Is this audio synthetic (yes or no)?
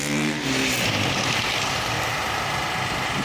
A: no